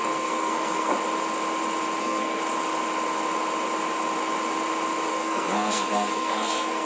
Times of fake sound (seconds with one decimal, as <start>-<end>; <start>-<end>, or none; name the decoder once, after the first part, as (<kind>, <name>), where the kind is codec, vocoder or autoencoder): 0.0-0.9 (codec, SNAC); 2.0-2.4; 5.1-6.9